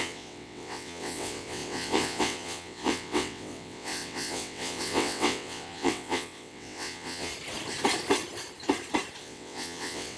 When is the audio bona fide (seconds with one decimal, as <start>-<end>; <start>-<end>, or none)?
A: 7.3-9.2